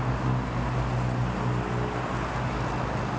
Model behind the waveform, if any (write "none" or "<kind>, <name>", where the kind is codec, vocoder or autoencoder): none